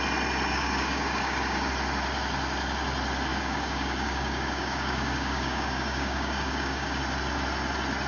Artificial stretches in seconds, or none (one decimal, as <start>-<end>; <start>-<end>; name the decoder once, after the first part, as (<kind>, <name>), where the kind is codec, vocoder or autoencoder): 0.5-1.7 (codec, DAC); 3.3-7.0